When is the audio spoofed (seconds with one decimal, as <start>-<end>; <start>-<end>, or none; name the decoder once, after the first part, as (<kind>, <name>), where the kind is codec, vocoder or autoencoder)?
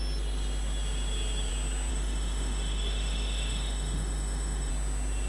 1.9-4.7 (autoencoder, DAC-VAE)